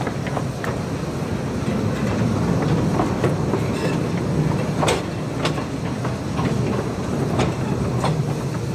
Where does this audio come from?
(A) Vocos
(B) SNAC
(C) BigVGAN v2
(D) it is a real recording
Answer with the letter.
D